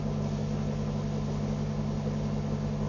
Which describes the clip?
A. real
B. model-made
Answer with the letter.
A